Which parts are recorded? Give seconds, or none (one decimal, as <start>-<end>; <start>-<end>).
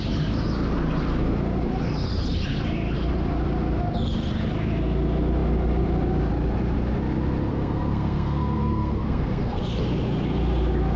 0.0-7.5; 9.6-11.0